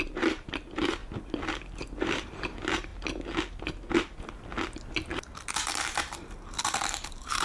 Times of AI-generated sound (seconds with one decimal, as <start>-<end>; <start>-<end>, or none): 0.0-1.0; 2.0-2.9; 5.5-7.4